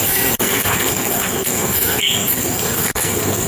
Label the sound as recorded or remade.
remade